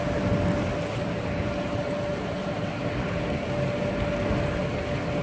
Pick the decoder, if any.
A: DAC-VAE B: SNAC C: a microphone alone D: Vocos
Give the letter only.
C